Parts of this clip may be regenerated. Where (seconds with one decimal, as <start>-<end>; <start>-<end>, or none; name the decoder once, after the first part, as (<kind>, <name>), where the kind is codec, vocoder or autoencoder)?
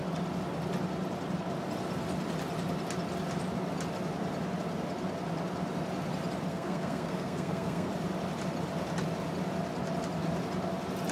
6.5-7.9 (codec, SNAC)